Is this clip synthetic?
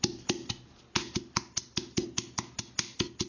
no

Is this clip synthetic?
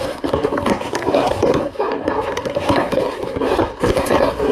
yes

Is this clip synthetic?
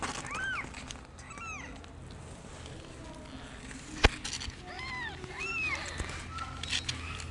no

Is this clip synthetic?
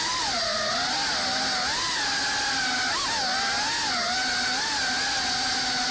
no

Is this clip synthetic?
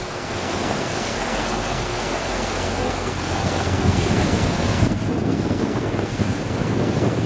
yes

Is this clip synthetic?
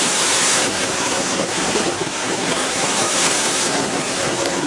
yes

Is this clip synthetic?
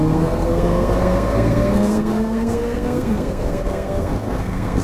yes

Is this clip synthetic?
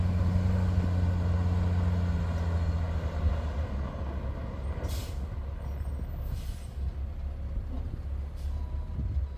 no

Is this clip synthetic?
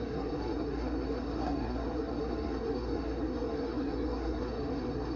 yes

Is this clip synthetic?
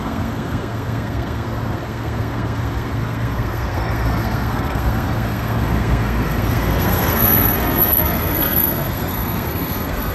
yes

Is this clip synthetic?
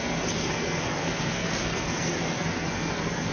yes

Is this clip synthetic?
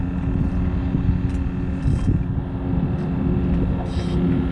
no